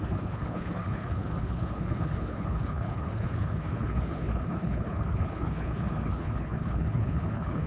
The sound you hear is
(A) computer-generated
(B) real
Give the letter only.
A